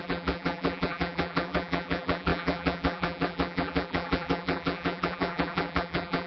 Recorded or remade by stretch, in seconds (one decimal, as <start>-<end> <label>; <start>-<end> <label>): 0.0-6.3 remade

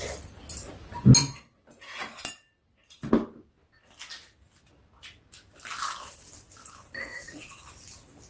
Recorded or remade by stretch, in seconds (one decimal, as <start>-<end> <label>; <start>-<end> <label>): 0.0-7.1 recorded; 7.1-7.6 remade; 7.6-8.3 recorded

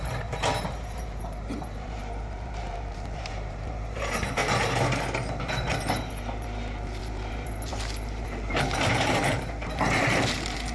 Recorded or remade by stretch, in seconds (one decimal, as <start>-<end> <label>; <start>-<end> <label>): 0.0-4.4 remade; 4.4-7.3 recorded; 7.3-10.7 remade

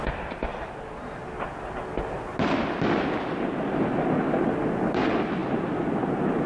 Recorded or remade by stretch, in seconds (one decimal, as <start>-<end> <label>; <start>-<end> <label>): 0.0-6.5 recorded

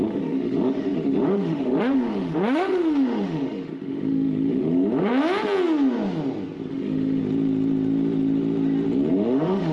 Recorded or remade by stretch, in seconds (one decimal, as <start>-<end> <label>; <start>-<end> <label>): 0.0-5.1 remade; 5.1-6.7 recorded; 6.7-7.2 remade; 7.2-9.1 recorded; 9.1-9.7 remade

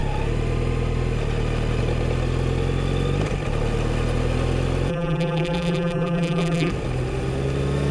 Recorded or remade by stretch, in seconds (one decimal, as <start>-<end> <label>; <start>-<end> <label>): 0.0-4.9 recorded; 4.9-6.7 remade; 6.7-7.9 recorded